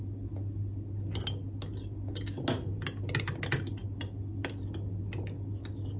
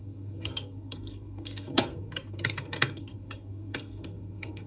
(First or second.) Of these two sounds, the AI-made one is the second